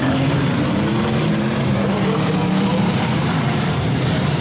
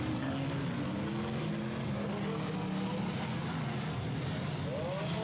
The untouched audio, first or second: second